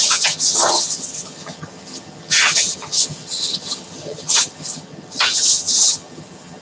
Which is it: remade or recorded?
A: remade